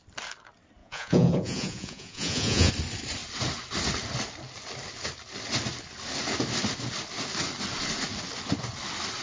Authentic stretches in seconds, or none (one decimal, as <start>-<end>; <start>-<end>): 0.0-0.8; 2.7-9.2